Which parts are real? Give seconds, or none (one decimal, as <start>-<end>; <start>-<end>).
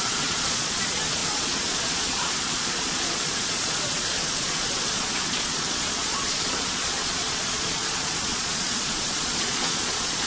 none